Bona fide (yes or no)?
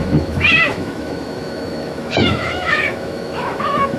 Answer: no